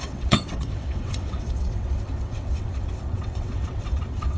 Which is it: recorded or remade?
remade